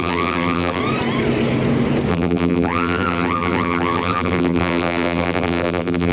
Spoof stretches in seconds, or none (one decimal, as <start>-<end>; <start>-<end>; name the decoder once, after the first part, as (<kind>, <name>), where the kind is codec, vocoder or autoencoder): 0.0-0.8 (vocoder, BigVGAN v2); 2.1-6.1